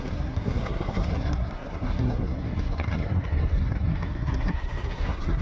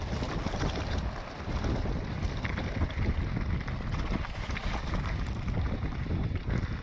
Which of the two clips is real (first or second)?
second